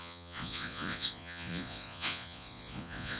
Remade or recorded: remade